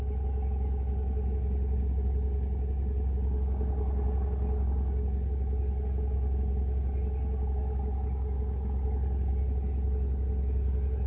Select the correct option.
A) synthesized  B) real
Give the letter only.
B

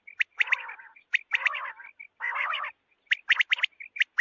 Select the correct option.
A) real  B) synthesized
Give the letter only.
A